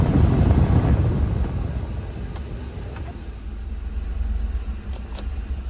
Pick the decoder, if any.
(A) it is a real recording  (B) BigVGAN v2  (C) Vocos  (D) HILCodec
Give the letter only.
A